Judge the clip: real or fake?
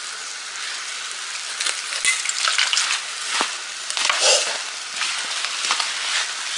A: real